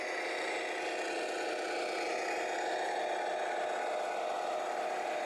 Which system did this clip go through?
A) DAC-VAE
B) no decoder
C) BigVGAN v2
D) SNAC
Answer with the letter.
C